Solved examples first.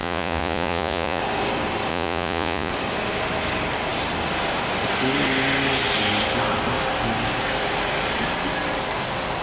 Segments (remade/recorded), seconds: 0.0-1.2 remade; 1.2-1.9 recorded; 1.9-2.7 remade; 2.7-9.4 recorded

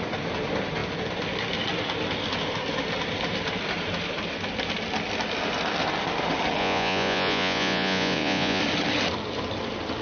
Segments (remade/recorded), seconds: 0.0-6.6 recorded; 6.6-8.6 remade; 8.6-10.0 recorded

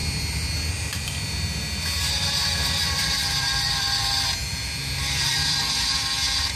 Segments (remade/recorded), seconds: 0.0-4.0 remade; 4.0-4.4 recorded; 4.4-5.6 remade; 5.6-6.6 recorded

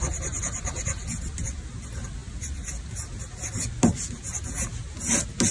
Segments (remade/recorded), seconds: 0.0-5.5 recorded

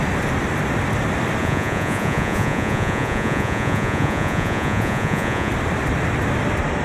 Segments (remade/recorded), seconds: 0.0-1.4 recorded; 1.4-5.5 remade; 5.5-6.8 recorded